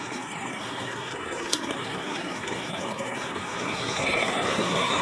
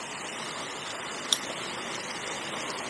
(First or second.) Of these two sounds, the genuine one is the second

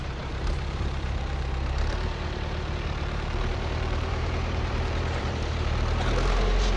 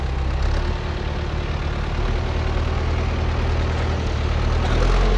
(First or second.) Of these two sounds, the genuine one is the second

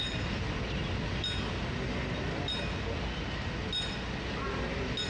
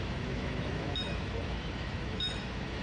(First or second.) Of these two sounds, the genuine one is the first